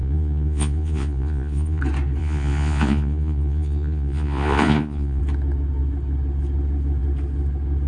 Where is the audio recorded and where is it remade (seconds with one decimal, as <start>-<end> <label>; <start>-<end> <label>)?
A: 0.0-1.8 remade; 1.8-2.2 recorded; 2.2-5.2 remade; 5.2-7.9 recorded